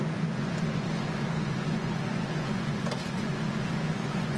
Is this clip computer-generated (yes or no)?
yes